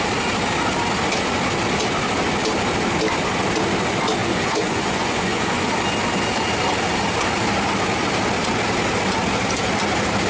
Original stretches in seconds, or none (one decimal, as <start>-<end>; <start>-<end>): 0.0-4.2; 5.7-10.3